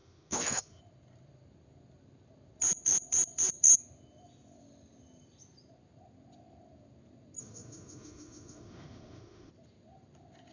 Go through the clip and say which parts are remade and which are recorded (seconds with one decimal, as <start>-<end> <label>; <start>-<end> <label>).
0.0-0.8 remade; 0.8-7.4 recorded; 7.4-9.5 remade; 9.5-10.5 recorded